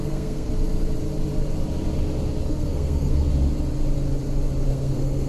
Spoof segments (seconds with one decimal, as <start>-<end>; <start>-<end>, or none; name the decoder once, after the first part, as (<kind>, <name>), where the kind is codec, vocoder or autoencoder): 0.0-0.5 (codec, SNAC); 2.5-3.3; 4.7-5.3